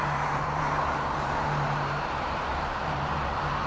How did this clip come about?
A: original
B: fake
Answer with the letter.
B